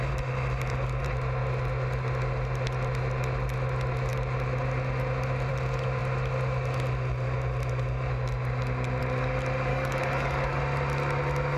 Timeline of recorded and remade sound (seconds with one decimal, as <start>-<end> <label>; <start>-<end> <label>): 0.0-9.7 recorded; 9.7-10.6 remade; 10.6-11.6 recorded